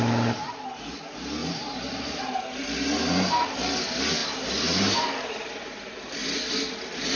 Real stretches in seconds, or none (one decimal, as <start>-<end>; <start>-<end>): 0.0-1.4; 2.2-4.2; 5.0-7.2